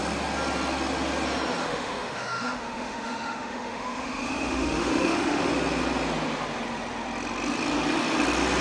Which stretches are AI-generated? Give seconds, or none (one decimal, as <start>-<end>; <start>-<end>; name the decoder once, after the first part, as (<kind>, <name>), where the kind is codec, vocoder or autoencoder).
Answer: 1.6-5.5 (autoencoder, DAC-VAE)